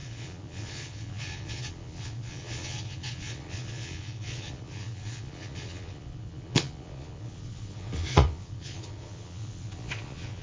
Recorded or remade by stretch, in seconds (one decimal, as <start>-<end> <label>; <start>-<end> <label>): 0.0-10.4 remade